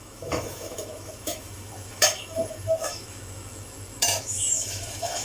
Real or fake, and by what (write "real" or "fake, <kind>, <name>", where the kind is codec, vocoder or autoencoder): fake, autoencoder, DAC-VAE